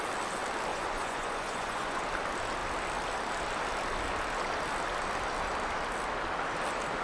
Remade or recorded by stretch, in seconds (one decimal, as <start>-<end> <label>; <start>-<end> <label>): 0.0-0.7 recorded; 0.7-2.0 remade; 2.0-7.0 recorded